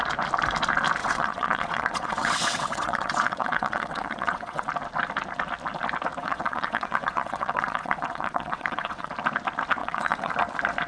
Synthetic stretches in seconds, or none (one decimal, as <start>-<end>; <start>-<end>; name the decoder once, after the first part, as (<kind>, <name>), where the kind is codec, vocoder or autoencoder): 1.0-4.7 (vocoder, WaveNeXt); 6.2-9.1; 9.8-10.3